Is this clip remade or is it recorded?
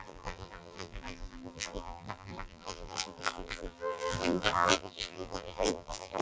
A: remade